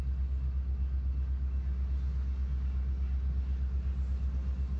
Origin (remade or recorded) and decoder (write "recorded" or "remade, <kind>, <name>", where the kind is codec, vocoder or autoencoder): recorded